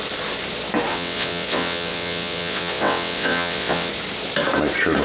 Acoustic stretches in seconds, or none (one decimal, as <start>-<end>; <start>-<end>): 0.0-0.9; 3.9-5.0